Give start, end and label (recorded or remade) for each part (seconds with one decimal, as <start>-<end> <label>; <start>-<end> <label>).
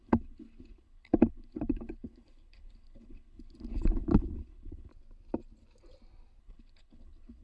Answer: 0.0-4.9 remade; 4.9-6.4 recorded; 6.4-7.4 remade